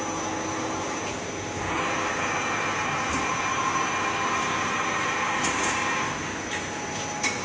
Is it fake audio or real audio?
real